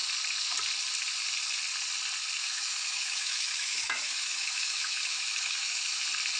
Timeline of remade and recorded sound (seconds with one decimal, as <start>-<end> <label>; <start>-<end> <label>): 0.0-2.4 recorded; 2.4-6.0 remade; 6.0-6.4 recorded

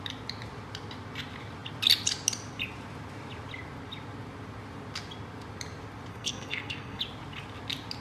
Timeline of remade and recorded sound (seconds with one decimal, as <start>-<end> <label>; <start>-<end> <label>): 0.0-6.1 recorded; 6.1-7.0 remade; 7.0-8.0 recorded

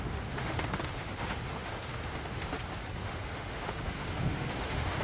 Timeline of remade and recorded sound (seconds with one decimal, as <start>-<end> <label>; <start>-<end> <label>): 0.0-2.5 remade; 2.5-3.0 recorded; 3.0-5.0 remade

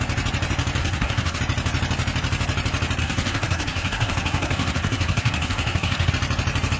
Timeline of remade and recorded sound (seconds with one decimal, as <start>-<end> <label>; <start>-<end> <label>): 0.0-0.8 recorded; 0.8-1.4 remade; 1.4-3.0 recorded; 3.0-6.1 remade; 6.1-6.8 recorded